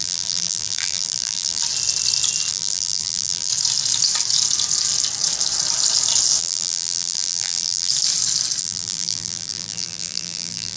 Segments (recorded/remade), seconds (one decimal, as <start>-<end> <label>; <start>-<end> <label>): 0.0-1.6 remade; 1.6-2.5 recorded; 2.5-3.5 remade; 3.5-6.4 recorded; 6.4-7.9 remade; 7.9-8.6 recorded; 8.6-10.8 remade